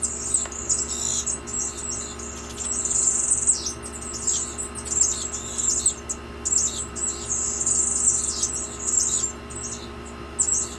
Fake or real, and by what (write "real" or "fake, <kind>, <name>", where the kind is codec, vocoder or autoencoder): real